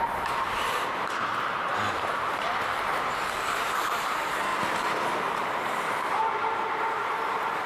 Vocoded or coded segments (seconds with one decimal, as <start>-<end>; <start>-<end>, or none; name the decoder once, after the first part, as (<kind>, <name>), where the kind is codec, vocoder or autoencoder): 0.0-4.5 (vocoder, BigVGAN v2); 5.2-7.7